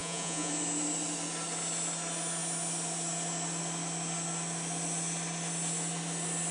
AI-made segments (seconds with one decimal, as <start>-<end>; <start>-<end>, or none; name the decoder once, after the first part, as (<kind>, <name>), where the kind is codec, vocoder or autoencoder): 0.0-0.5 (vocoder, Vocos)